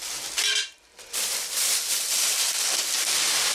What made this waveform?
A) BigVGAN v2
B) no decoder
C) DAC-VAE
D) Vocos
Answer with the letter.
A